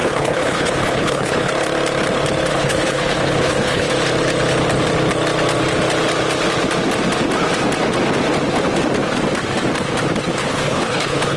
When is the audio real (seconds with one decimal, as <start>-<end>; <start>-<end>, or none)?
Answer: 1.5-2.5; 3.9-10.4